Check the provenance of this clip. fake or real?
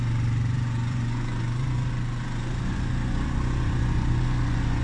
fake